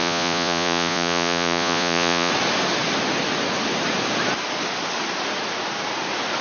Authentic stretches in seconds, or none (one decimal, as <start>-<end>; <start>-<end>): 2.3-6.4